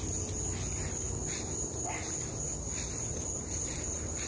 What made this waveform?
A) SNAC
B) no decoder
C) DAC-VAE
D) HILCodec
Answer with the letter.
B